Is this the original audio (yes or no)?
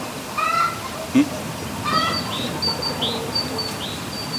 yes